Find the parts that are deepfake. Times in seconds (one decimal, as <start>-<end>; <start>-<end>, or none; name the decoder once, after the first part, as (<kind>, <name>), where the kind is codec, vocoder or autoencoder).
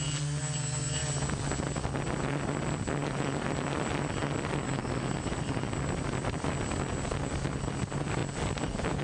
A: none